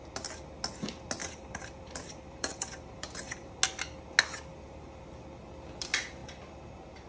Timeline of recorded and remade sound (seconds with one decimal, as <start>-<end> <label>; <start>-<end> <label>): 0.0-1.2 recorded; 1.2-3.5 remade; 3.5-4.5 recorded; 4.5-5.1 remade; 5.1-7.1 recorded